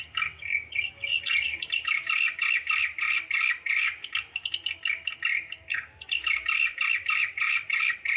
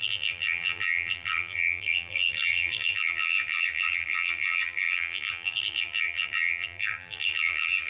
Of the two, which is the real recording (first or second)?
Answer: first